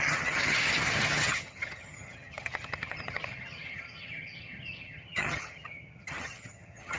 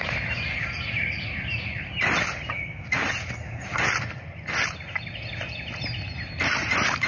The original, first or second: second